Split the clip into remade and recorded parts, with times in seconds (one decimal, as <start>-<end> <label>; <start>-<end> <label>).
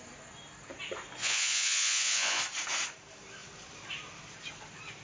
0.0-1.2 recorded; 1.2-2.4 remade; 2.4-5.0 recorded